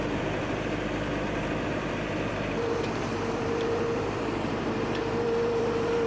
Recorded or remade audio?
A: remade